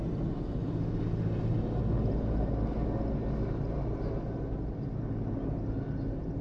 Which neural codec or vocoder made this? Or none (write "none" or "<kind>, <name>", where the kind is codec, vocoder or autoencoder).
none